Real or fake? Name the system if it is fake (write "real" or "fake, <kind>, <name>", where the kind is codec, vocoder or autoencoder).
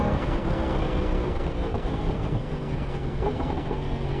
fake, codec, SNAC